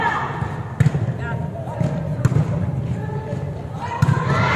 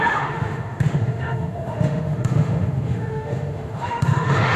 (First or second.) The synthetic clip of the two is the second